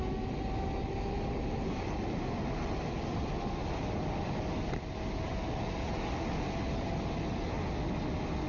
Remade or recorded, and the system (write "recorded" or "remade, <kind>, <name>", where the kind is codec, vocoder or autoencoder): recorded